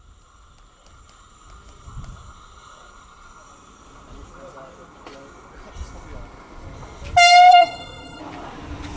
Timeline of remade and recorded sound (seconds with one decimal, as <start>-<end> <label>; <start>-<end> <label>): 0.0-7.5 recorded; 7.5-8.2 remade; 8.2-9.0 recorded